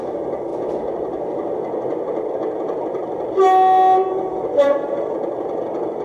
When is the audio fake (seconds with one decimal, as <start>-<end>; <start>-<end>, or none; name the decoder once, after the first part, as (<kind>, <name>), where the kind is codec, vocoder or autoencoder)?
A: 0.0-0.5 (vocoder, BigVGAN v2); 4.1-6.0